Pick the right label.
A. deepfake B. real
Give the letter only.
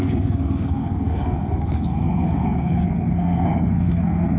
A